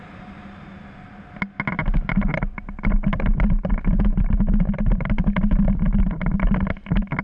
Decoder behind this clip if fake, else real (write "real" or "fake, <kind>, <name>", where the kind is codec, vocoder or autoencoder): real